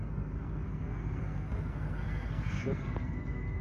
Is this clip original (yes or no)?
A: no